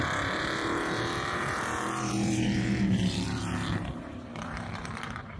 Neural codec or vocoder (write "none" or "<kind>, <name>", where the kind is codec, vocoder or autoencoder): vocoder, BigVGAN v2